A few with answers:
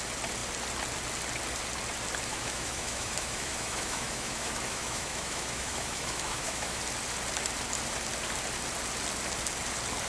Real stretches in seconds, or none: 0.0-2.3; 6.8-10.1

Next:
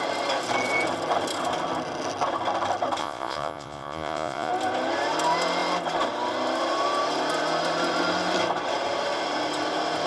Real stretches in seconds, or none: 0.0-3.0; 4.5-10.1

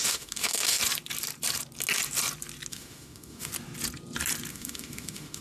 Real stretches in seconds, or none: 0.8-2.7; 3.5-4.5

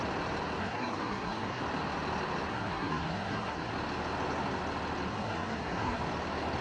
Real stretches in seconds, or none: 0.0-0.6; 1.6-2.5; 3.7-5.1; 6.0-6.6